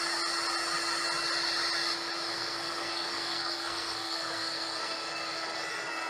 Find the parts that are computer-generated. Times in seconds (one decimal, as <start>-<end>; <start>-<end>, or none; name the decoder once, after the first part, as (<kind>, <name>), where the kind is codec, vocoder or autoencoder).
2.3-6.1 (codec, SNAC)